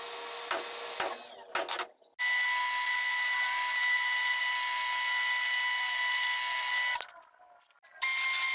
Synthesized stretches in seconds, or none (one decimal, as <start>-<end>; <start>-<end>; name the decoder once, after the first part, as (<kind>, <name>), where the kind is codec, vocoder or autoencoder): none

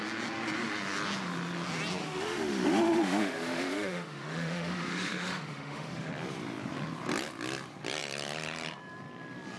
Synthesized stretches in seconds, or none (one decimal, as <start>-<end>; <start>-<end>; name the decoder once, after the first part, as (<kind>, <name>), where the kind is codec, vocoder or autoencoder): 2.0-6.1 (autoencoder, DAC-VAE)

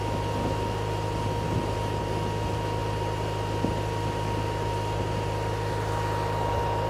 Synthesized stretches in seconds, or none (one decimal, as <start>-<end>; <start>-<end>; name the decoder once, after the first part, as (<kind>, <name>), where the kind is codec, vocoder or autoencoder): none

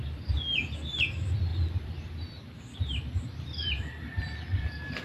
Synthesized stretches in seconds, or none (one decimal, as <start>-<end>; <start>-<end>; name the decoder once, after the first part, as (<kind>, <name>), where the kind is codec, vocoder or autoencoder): none

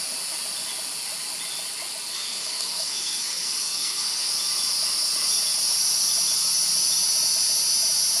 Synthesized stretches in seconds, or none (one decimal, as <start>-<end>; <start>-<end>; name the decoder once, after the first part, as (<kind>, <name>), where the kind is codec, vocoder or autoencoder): 2.1-4.3 (codec, SNAC)

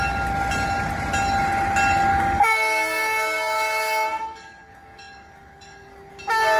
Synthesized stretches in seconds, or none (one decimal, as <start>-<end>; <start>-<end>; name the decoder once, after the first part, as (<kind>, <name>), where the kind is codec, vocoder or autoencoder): 2.1-6.1 (codec, DAC)

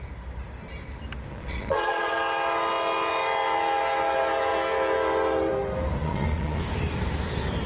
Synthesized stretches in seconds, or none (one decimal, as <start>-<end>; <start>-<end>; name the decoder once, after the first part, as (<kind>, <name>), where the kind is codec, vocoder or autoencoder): 1.3-2.1 (vocoder, Vocos); 6.0-6.6

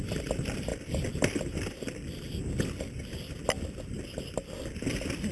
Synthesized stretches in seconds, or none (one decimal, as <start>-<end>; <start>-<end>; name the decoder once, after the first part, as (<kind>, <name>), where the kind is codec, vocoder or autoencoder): none